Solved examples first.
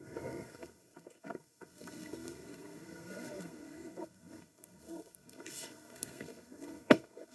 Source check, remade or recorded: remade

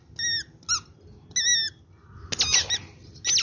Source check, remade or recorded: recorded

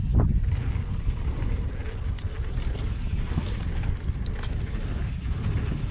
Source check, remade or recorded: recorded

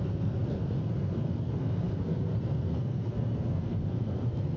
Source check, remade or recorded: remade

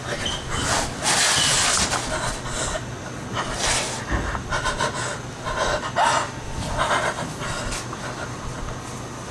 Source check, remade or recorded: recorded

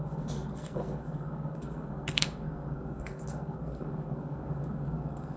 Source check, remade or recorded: remade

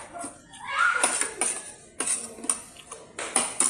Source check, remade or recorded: recorded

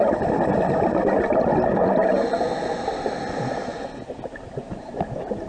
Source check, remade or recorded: recorded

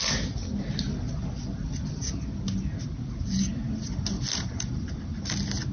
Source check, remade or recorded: recorded